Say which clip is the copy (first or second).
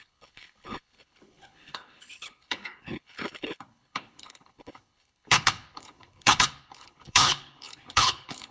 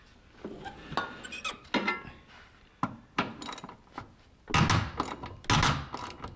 first